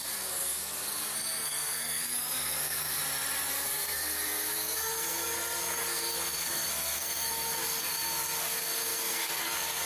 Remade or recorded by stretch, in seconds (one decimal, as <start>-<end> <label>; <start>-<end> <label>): 0.0-3.0 remade; 3.0-3.5 recorded; 3.5-9.9 remade